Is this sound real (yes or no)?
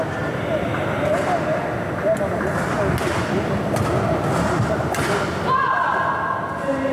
yes